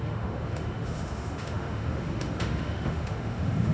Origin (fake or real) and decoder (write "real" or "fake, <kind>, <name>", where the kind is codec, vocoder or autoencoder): fake, autoencoder, DAC-VAE